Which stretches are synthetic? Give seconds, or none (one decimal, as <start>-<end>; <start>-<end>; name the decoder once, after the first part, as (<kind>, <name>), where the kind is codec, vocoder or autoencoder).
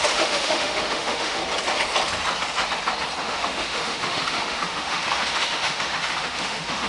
0.0-1.4 (autoencoder, DAC-VAE); 3.2-6.9